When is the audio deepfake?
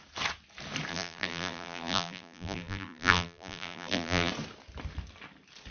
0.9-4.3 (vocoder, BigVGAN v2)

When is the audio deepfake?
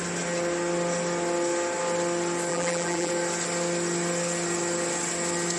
2.5-3.1 (vocoder, BigVGAN v2)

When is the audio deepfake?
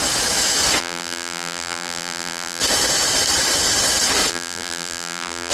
0.8-2.6 (vocoder, BigVGAN v2); 4.3-5.5